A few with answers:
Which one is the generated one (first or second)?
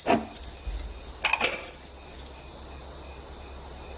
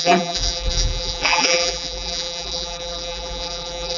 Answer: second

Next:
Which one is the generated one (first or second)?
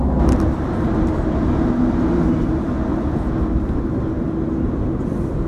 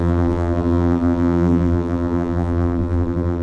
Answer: second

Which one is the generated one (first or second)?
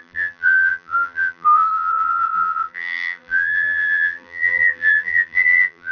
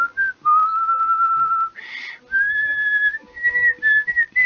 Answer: first